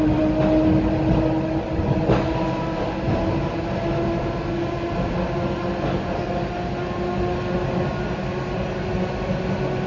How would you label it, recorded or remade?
recorded